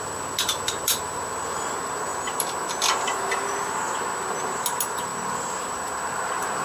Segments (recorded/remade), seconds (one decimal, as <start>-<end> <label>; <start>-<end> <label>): 0.0-6.6 recorded